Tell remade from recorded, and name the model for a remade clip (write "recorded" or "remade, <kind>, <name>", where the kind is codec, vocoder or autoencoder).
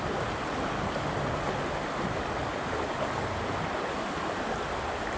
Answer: recorded